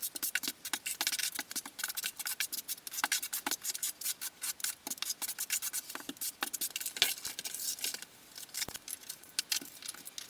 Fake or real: real